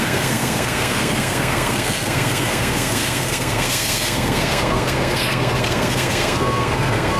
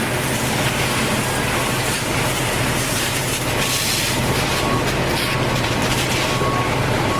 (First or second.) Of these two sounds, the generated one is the first